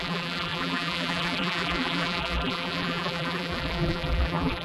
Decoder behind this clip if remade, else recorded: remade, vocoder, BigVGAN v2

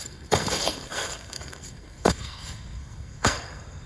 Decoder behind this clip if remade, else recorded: remade, codec, SNAC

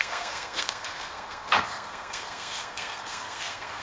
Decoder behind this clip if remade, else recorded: remade, codec, SNAC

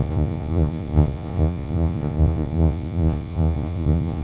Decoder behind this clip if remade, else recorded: remade, vocoder, Vocos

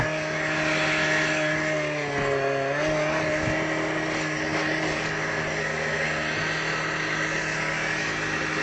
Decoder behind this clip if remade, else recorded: recorded